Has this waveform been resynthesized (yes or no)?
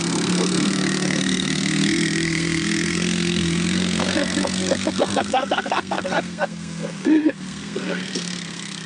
yes